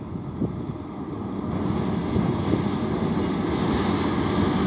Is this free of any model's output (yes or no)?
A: yes